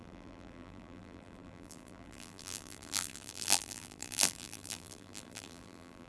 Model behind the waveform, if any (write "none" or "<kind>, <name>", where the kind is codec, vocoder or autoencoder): vocoder, BigVGAN v2